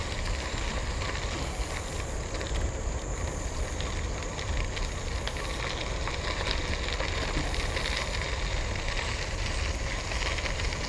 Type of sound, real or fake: real